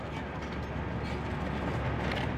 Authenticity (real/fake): real